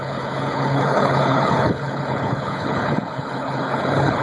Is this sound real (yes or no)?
no